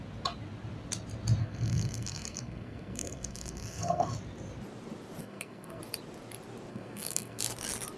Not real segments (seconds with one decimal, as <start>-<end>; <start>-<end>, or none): 1.4-4.1; 5.2-5.8; 6.7-7.4